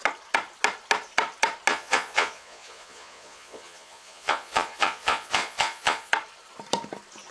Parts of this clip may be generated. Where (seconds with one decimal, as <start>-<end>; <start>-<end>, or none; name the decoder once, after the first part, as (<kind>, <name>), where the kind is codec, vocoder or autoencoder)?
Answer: 1.7-6.1 (vocoder, Vocos)